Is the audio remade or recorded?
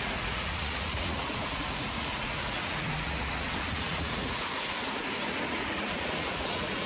remade